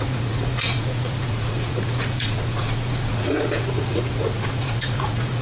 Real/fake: fake